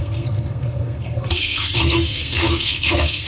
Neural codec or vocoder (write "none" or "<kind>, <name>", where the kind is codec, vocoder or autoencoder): codec, SNAC